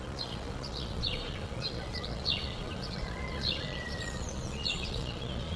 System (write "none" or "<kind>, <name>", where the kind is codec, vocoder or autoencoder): vocoder, Vocos